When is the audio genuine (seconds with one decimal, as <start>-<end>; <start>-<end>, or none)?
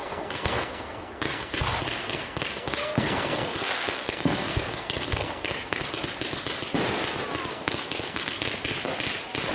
1.5-2.0; 5.9-7.5; 8.6-9.5